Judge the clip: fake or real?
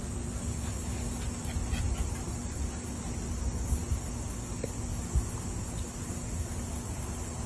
real